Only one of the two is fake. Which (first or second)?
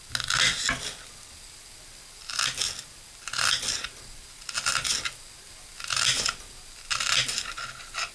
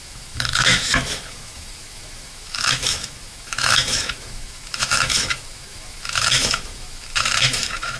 second